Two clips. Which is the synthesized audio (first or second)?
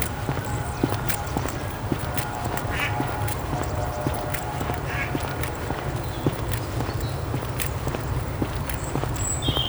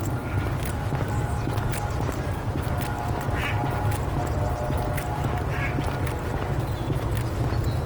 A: first